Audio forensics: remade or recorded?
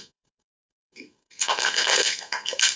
remade